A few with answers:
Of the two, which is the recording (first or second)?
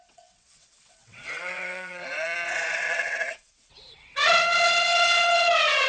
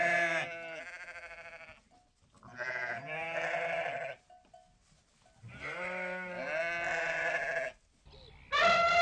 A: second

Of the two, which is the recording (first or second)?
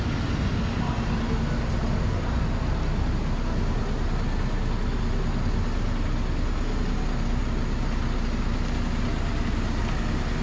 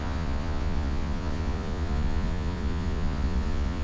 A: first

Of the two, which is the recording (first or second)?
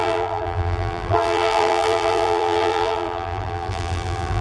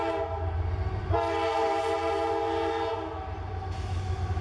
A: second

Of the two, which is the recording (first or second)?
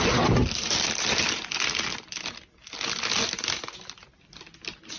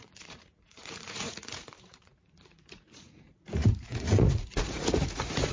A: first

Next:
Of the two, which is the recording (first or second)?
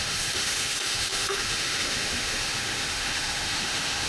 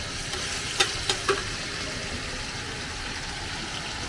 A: second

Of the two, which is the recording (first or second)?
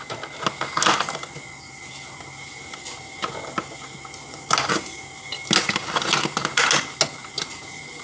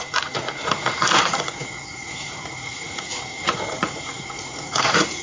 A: first